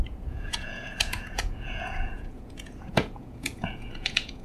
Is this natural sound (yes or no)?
no